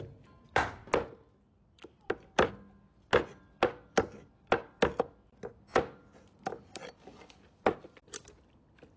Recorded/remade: recorded